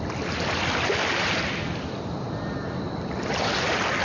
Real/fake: real